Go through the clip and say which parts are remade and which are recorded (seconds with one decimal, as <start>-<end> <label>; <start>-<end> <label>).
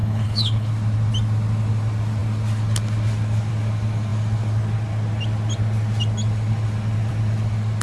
0.0-0.7 remade; 0.7-7.8 recorded